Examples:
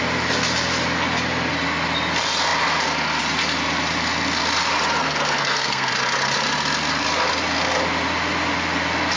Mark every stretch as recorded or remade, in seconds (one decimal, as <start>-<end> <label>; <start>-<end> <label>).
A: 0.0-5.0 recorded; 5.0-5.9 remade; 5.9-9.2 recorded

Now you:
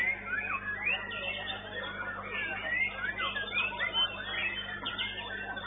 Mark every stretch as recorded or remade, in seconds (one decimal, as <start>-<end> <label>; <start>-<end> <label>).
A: 0.0-5.7 recorded

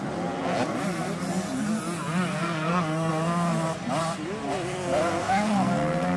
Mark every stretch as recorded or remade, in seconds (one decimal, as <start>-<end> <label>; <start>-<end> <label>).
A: 0.0-2.3 recorded; 2.3-3.1 remade; 3.1-5.2 recorded; 5.2-6.2 remade

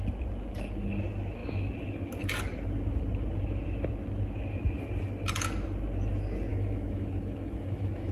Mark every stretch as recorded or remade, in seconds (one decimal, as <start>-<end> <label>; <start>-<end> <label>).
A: 0.0-6.5 recorded; 6.5-8.1 remade

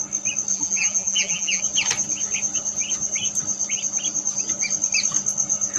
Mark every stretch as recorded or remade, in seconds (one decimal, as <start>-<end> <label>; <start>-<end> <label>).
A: 0.0-0.5 recorded; 0.5-1.6 remade; 1.6-5.8 recorded

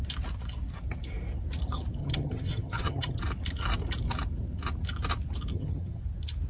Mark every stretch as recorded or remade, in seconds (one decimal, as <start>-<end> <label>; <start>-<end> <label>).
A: 0.0-2.0 recorded; 2.0-3.2 remade; 3.2-5.5 recorded; 5.5-6.0 remade; 6.0-6.5 recorded

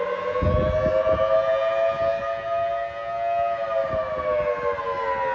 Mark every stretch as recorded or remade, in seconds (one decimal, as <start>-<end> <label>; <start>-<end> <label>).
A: 0.0-5.3 recorded